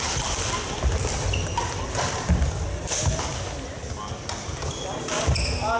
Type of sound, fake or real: real